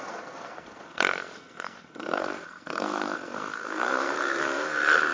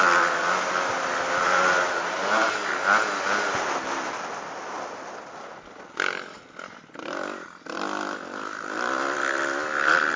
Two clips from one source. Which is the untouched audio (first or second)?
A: second